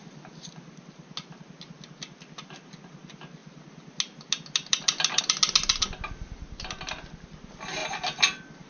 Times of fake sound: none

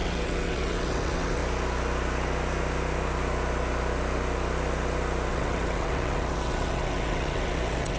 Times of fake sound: 0.0-1.4; 5.3-8.0

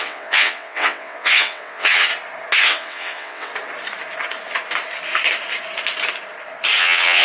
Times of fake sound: 0.0-2.1; 2.6-3.5; 6.8-7.2

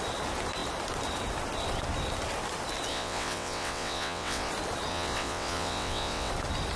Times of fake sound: 2.9-4.5; 4.9-6.3

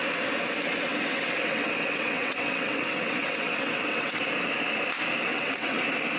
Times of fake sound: 0.9-4.2; 5.3-5.8